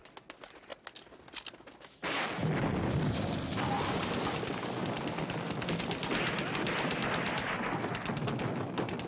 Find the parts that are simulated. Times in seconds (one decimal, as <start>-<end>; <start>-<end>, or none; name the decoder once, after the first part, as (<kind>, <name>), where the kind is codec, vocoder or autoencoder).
none